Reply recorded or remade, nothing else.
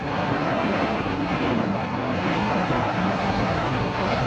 remade